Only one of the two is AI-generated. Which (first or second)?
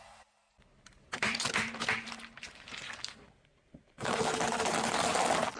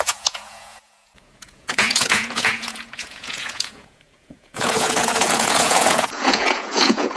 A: second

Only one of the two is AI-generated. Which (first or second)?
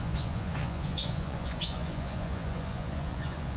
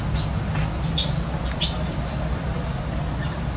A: first